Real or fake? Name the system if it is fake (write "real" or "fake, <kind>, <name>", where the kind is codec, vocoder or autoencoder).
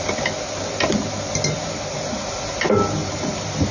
real